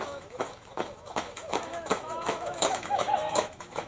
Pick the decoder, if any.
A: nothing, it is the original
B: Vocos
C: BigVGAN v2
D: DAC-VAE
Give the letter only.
D